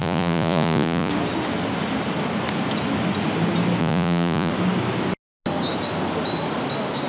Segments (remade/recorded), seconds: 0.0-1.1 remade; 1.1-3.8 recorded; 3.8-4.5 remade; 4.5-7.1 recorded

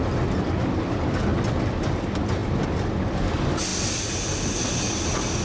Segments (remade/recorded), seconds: 0.0-5.4 recorded

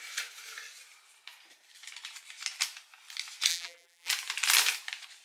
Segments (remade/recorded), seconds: 0.0-3.5 recorded; 3.5-4.1 remade; 4.1-5.2 recorded

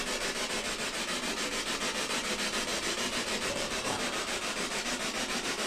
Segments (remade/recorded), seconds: 0.0-2.7 recorded; 2.7-4.0 remade; 4.0-5.7 recorded

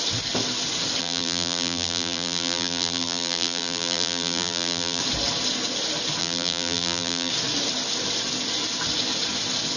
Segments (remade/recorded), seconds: 0.0-1.0 recorded; 1.0-5.0 remade; 5.0-6.2 recorded; 6.2-7.3 remade; 7.3-9.8 recorded